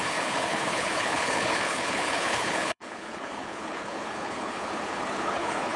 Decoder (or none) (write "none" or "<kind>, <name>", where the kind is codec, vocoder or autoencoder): codec, HILCodec